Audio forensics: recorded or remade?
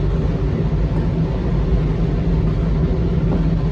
recorded